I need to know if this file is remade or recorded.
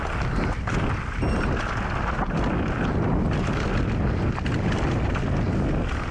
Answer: recorded